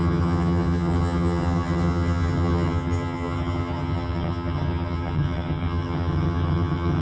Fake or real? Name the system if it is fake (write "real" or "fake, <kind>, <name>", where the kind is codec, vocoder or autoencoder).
fake, vocoder, HiFi-GAN